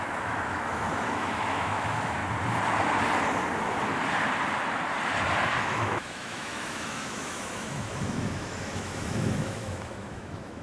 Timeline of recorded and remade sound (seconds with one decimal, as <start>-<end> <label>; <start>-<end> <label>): 0.0-2.2 remade; 2.2-5.6 recorded; 5.6-10.6 remade